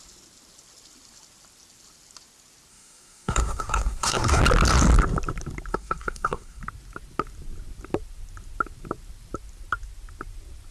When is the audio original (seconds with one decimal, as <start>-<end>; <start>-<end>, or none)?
0.0-2.7; 4.4-5.7; 6.6-10.7